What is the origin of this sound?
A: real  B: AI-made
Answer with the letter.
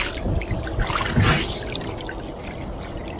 A